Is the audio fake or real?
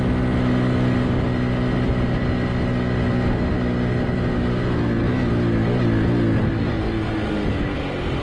real